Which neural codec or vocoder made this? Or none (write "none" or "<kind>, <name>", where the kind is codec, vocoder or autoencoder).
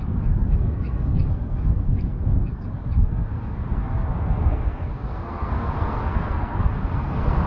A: codec, SNAC